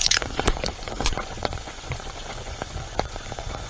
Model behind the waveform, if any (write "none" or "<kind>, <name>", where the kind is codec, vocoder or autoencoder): vocoder, Vocos